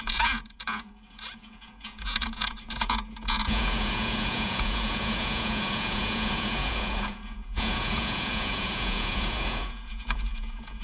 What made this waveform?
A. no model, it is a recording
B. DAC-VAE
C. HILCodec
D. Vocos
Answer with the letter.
D